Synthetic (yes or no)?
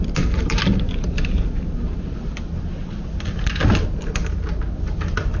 no